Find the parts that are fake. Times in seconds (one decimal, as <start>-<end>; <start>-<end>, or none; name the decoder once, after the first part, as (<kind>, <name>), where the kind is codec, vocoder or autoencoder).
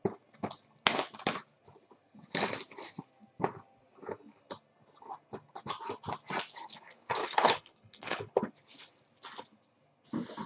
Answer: 7.2-8.3 (codec, HILCodec)